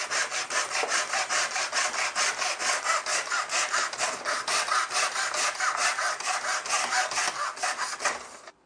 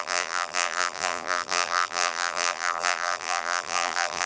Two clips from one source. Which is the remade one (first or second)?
second